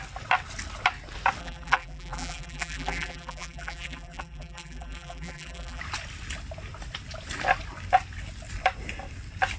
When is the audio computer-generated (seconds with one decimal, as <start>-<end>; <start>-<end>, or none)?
1.4-5.8